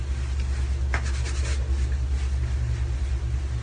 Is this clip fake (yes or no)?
no